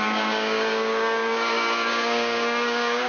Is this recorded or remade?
remade